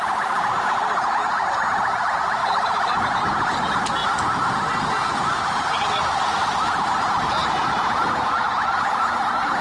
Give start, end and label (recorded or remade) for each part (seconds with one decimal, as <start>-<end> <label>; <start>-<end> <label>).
0.0-2.4 recorded; 2.4-3.1 remade; 3.1-7.4 recorded; 7.4-7.9 remade; 7.9-9.6 recorded